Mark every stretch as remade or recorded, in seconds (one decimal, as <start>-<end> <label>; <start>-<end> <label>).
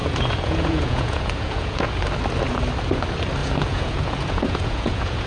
0.0-1.9 remade; 1.9-3.4 recorded; 3.4-5.3 remade